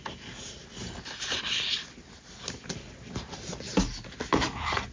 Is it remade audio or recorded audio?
recorded